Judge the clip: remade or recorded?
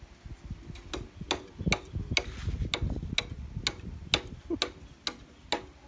recorded